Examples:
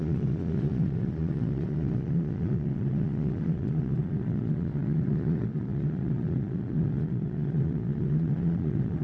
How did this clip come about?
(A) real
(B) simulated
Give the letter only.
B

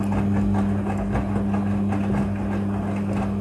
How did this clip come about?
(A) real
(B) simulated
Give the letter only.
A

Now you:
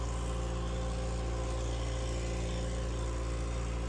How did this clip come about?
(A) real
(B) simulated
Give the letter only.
A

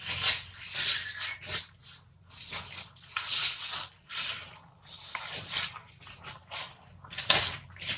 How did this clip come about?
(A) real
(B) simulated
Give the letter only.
A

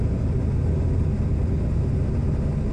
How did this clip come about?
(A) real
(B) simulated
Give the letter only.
A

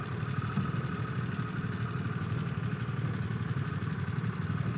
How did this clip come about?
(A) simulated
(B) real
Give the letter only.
B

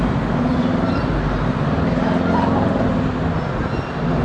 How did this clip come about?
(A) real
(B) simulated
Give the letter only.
A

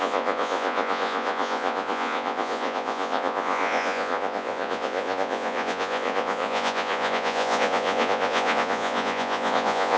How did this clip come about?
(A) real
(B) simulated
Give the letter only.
B